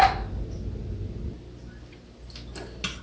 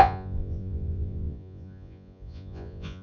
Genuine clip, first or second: first